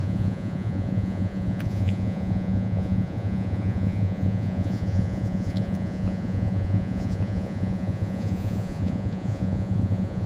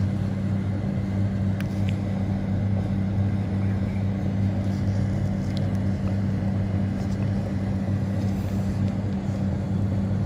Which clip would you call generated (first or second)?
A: first